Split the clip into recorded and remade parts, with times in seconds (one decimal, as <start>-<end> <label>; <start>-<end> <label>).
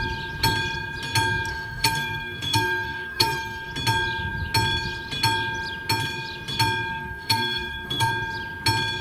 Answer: 0.0-1.5 recorded; 1.5-3.7 remade; 3.7-6.9 recorded; 6.9-8.1 remade; 8.1-9.0 recorded